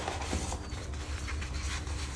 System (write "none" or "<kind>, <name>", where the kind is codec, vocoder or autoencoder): none